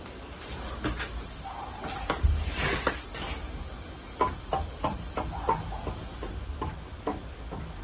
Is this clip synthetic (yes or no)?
no